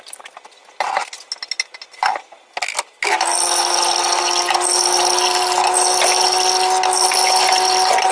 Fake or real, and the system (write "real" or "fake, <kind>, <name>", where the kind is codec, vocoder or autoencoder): real